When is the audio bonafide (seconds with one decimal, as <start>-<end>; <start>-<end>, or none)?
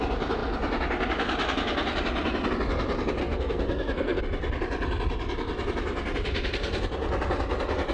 0.0-3.2; 4.2-7.9